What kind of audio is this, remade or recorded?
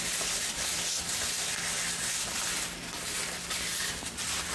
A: recorded